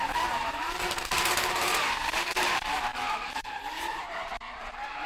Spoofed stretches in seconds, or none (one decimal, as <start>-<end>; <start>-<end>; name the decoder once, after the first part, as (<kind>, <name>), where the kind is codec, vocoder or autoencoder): 0.0-5.1 (vocoder, BigVGAN v2)